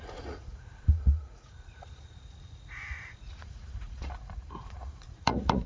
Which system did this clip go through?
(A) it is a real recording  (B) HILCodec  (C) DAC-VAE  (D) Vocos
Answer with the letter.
D